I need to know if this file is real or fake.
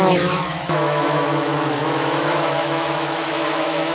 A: fake